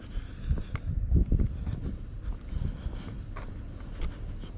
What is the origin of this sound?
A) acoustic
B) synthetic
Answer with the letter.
A